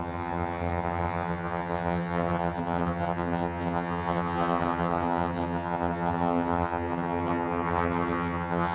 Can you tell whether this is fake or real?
fake